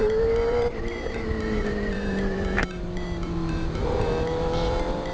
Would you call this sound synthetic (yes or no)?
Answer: yes